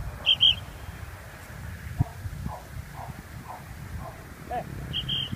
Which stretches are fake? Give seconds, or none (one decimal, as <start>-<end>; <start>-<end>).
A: none